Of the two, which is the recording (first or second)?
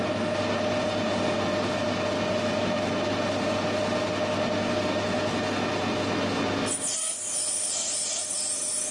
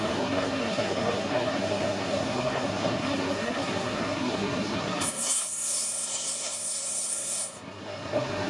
first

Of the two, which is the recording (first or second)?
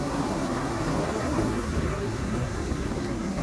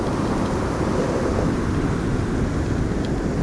second